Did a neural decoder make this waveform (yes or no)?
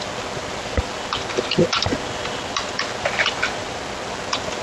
no